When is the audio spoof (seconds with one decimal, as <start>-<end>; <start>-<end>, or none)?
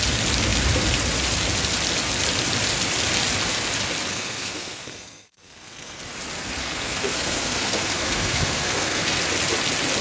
4.1-6.0; 6.6-9.2